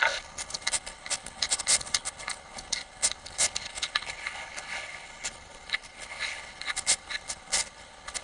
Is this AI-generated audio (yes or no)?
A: yes